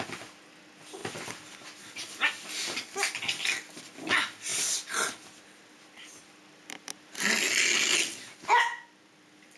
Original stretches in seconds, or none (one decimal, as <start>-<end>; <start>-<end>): 0.0-9.6